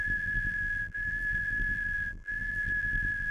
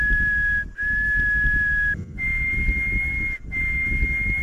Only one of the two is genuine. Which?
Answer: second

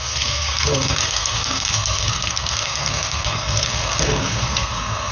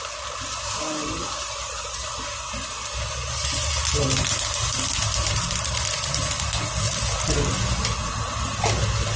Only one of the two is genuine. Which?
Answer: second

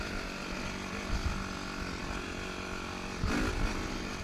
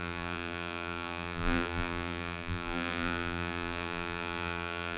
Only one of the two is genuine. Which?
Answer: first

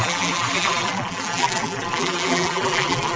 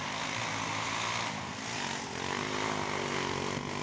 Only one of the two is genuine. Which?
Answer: second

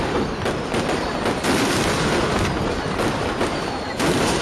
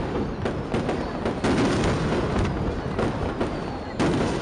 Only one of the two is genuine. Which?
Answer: second